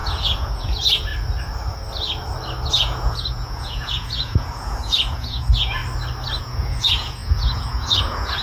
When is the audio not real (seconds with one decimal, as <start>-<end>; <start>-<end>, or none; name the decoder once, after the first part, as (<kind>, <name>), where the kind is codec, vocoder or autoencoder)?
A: 0.0-1.1 (vocoder, Vocos); 2.7-5.8; 6.4-8.4